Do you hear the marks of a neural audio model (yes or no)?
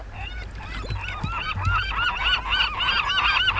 no